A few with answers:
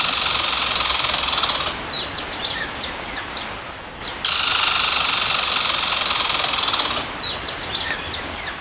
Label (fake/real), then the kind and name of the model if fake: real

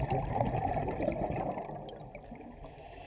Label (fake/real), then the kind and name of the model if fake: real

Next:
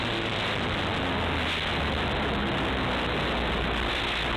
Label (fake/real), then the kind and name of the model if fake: real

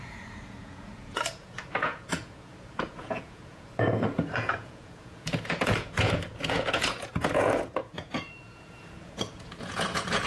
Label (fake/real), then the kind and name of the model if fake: fake, vocoder, Vocos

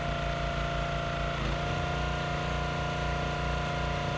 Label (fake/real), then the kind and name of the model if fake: real